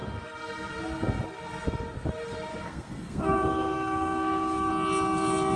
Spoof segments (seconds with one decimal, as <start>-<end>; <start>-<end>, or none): 0.0-0.7; 2.5-4.7